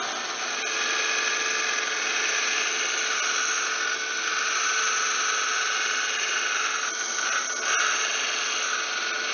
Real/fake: real